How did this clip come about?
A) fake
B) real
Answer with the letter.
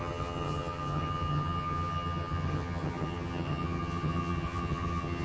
A